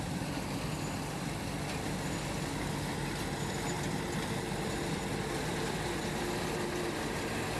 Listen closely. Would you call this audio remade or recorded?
recorded